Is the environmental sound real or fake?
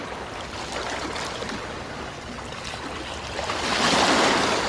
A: real